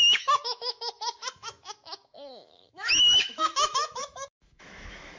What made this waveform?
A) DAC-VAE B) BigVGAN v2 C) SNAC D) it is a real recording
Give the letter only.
A